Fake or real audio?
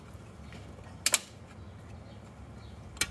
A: real